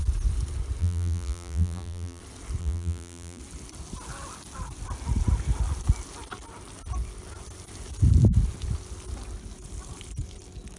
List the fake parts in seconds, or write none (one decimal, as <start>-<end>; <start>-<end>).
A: 0.8-2.2; 2.6-3.4